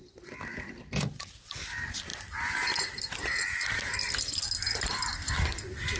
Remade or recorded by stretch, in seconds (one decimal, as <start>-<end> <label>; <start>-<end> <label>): 0.0-6.0 recorded